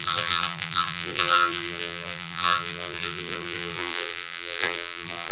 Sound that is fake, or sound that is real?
fake